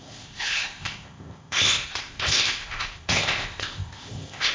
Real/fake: fake